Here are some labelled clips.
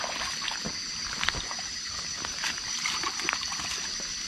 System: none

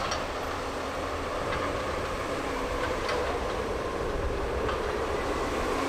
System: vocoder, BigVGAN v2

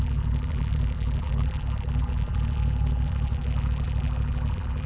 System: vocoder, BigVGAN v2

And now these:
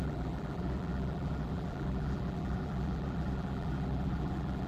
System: vocoder, BigVGAN v2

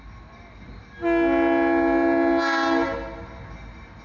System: none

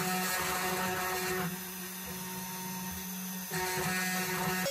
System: none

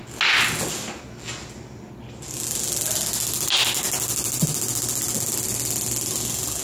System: none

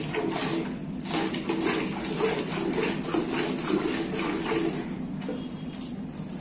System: none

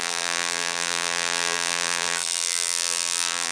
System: vocoder, BigVGAN v2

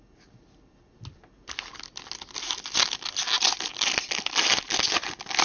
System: none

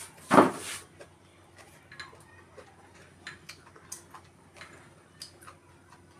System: none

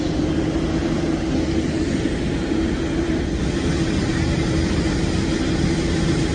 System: none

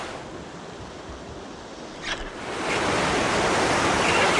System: none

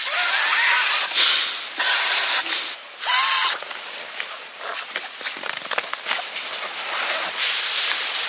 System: vocoder, BigVGAN v2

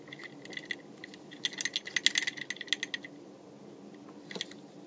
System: none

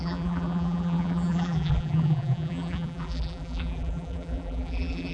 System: vocoder, BigVGAN v2